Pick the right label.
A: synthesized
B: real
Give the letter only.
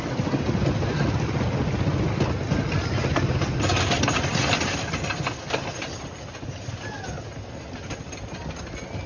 B